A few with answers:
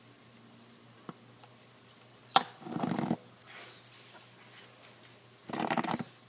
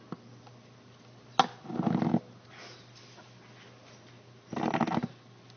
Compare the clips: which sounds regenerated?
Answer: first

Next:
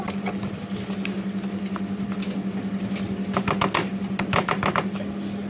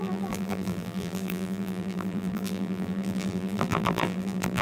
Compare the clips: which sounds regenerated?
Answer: second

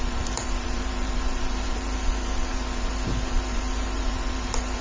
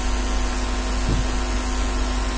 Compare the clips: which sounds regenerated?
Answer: first